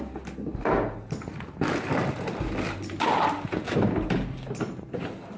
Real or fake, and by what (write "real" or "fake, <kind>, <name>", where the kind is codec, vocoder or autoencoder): real